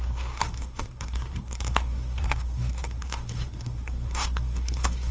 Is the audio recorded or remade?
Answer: remade